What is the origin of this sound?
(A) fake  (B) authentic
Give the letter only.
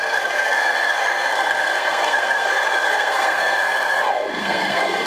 A